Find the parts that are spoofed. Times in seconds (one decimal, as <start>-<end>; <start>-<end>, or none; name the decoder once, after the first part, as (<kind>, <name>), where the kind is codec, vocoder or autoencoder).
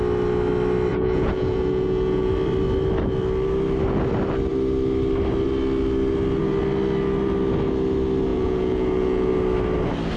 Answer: 0.9-2.3 (vocoder, Vocos); 8.3-9.3